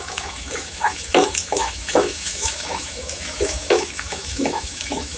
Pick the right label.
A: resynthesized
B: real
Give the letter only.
A